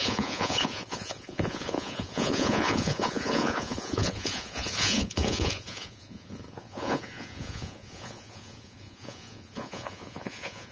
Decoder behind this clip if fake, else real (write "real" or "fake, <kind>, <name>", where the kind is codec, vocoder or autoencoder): fake, vocoder, Vocos